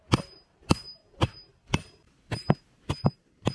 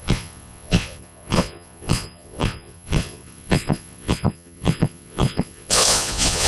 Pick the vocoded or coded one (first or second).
second